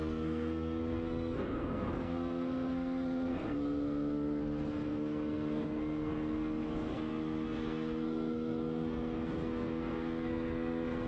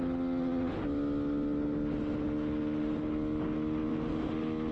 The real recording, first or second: second